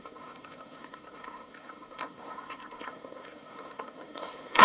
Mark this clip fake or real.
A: fake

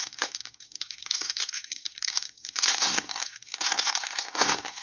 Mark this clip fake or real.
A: fake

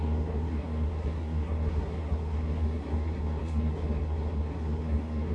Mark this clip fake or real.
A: fake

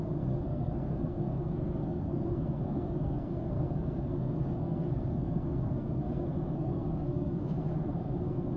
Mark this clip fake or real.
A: fake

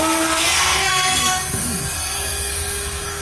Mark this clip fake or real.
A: fake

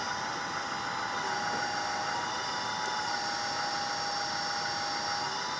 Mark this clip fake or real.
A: real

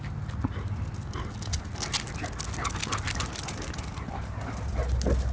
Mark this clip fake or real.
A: real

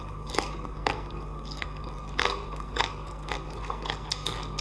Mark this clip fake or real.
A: fake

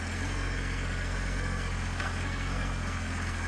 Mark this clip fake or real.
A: fake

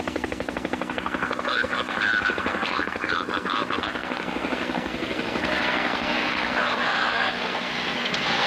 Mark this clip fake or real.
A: fake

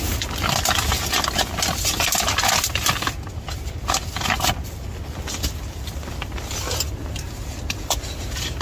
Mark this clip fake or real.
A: real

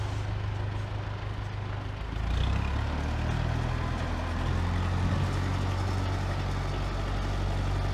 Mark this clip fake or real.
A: real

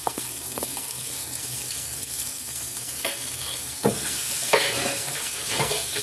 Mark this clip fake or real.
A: fake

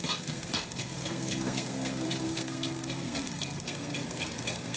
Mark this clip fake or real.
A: fake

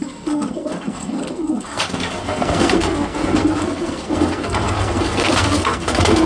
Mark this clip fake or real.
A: fake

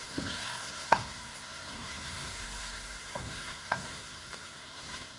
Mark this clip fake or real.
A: fake